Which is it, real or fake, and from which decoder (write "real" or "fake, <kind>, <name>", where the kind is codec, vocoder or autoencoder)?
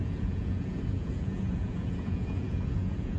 fake, vocoder, Vocos